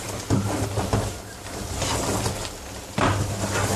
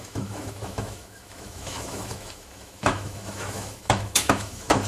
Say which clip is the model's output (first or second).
second